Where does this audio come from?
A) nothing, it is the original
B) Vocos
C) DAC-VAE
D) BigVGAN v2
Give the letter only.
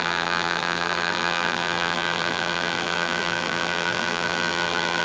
D